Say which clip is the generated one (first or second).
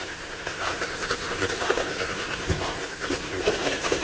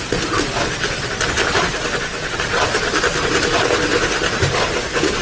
first